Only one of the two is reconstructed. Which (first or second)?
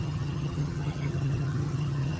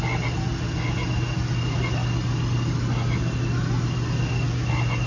first